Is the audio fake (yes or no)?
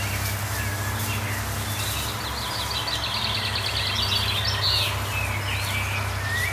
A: no